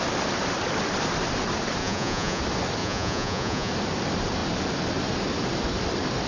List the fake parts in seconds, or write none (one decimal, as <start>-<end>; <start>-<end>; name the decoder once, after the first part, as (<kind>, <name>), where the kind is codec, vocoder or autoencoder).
1.8-2.4 (vocoder, Vocos); 2.8-3.7